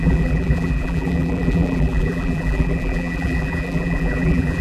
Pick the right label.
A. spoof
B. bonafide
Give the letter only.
A